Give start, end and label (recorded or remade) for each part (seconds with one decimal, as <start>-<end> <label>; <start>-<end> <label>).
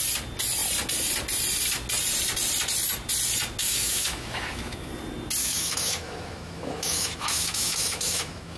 0.0-3.6 recorded; 3.6-4.9 remade; 4.9-5.4 recorded; 5.4-8.6 remade